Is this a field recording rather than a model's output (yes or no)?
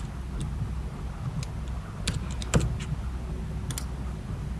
yes